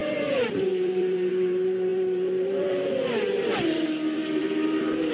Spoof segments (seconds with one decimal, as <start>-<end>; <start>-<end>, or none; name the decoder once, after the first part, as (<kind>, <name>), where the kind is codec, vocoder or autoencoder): 0.0-5.1 (vocoder, BigVGAN v2)